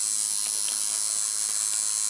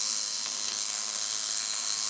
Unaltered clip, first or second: first